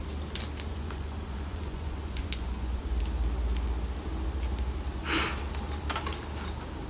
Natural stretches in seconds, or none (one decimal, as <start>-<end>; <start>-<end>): 0.0-0.7; 3.0-6.9